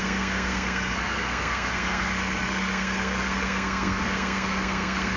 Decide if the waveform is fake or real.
fake